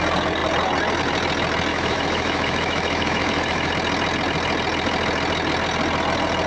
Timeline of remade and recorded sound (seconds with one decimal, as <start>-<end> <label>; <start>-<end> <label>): 0.0-1.7 recorded; 1.7-3.7 remade; 3.7-6.5 recorded